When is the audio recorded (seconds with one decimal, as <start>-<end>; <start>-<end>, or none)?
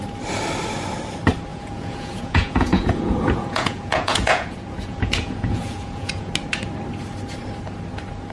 0.0-1.5; 6.3-8.3